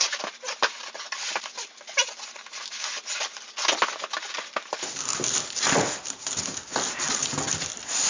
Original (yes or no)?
yes